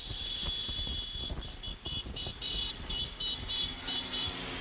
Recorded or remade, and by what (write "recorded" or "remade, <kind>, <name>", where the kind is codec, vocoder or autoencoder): recorded